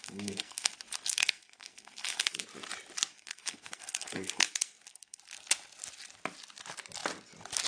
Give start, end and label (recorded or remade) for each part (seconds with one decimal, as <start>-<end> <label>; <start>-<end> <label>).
0.0-2.4 remade; 2.4-3.1 recorded; 3.1-5.2 remade; 5.2-7.7 recorded